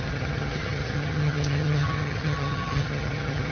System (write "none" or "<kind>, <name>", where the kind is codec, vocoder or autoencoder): vocoder, HiFi-GAN